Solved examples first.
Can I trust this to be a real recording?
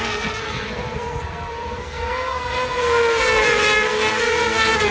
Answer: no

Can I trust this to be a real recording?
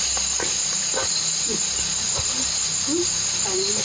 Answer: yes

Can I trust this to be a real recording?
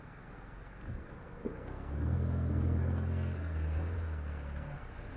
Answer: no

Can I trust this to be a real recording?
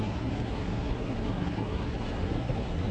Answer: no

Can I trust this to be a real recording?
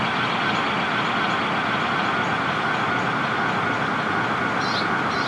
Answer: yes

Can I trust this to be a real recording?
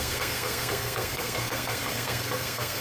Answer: no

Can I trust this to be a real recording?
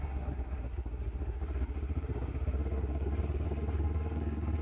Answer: no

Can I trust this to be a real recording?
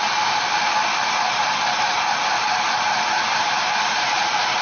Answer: yes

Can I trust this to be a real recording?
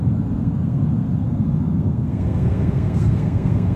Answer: no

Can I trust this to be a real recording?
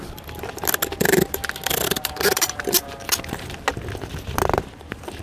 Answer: yes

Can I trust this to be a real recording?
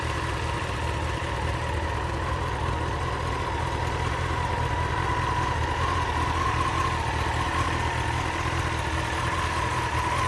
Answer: yes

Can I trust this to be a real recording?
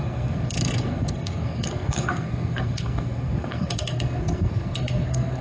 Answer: no